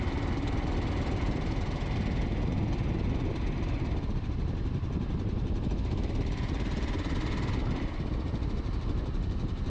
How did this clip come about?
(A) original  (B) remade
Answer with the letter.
B